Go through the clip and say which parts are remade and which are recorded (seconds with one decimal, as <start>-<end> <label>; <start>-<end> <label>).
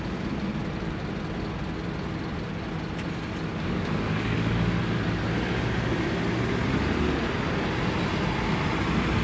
0.0-3.5 recorded; 3.5-4.8 remade; 4.8-9.2 recorded